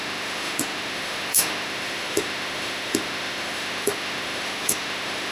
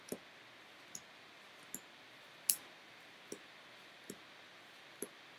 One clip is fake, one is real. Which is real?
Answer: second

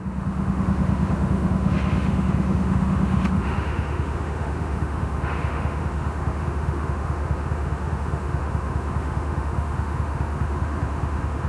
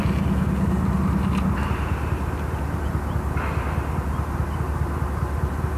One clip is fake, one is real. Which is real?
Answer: second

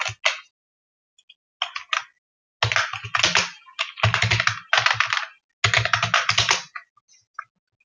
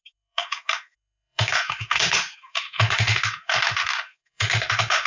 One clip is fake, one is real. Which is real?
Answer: first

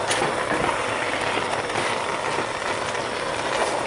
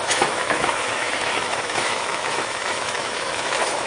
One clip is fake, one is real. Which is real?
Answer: first